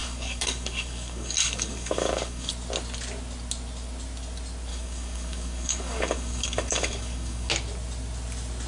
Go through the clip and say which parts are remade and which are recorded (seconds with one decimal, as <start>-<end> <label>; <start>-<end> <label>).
0.0-2.5 remade; 2.5-4.7 recorded; 4.7-7.5 remade; 7.5-8.7 recorded